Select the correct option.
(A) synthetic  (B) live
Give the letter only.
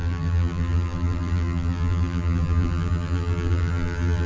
A